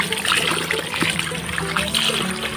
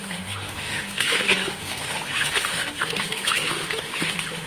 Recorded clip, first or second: first